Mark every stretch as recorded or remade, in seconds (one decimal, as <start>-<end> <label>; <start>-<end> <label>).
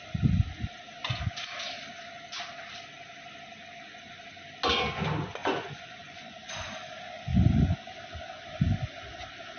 0.0-5.4 recorded; 5.4-6.4 remade; 6.4-9.6 recorded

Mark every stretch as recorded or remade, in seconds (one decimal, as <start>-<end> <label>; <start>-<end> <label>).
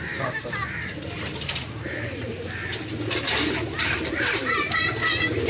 0.0-5.5 recorded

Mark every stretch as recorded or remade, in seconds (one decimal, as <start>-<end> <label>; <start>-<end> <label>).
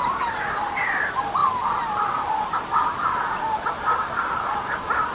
0.0-5.1 recorded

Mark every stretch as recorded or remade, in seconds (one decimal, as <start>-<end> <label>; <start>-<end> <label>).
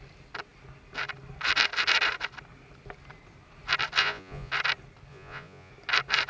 0.0-4.0 recorded; 4.0-4.5 remade; 4.5-5.1 recorded; 5.1-5.7 remade; 5.7-6.3 recorded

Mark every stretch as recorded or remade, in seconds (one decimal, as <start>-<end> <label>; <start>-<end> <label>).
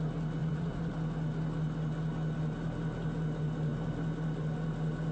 0.0-0.4 recorded; 0.4-0.9 remade; 0.9-5.1 recorded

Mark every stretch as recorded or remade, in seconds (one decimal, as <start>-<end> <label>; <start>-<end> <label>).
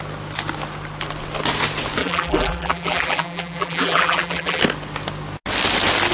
0.0-2.0 recorded; 2.0-4.6 remade; 4.6-6.1 recorded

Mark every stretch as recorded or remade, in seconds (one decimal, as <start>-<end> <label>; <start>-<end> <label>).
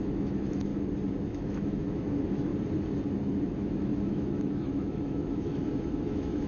0.0-0.7 remade; 0.7-1.3 recorded; 1.3-2.5 remade; 2.5-3.1 recorded; 3.1-6.5 remade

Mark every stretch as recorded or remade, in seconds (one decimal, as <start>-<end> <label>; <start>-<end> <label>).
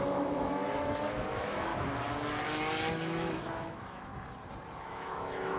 0.0-1.7 remade; 1.7-2.9 recorded; 2.9-4.1 remade; 4.1-4.8 recorded; 4.8-5.6 remade